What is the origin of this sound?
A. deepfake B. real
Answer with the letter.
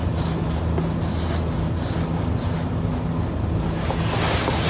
B